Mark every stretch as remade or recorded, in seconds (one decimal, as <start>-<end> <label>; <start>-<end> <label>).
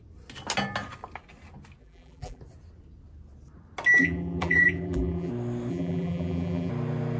0.0-1.8 recorded; 1.8-2.4 remade; 2.4-4.0 recorded; 4.0-5.3 remade; 5.3-5.7 recorded; 5.7-6.7 remade; 6.7-7.2 recorded